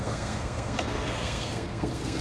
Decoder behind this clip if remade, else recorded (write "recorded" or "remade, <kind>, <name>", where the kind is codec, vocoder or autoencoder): remade, codec, SNAC